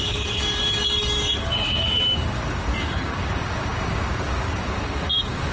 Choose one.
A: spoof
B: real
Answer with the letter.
A